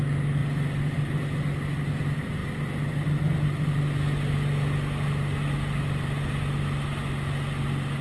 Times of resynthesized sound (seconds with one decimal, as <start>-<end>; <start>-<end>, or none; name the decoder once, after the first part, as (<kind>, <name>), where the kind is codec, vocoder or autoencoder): none